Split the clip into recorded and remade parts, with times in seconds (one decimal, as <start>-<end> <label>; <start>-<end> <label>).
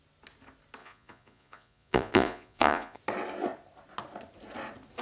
0.0-0.8 recorded; 0.8-3.0 remade; 3.0-5.0 recorded